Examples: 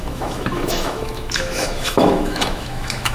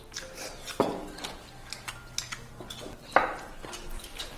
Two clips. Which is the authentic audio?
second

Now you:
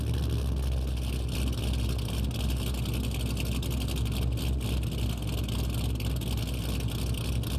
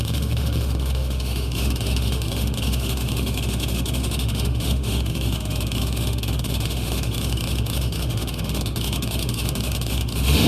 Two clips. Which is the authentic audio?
first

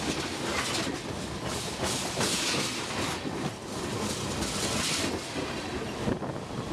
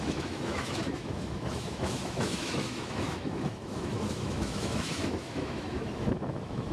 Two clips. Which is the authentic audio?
first